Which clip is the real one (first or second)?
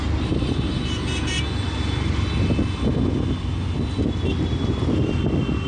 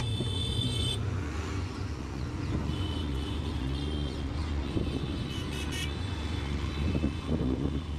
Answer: first